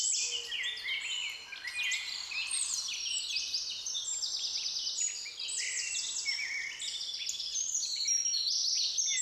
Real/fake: real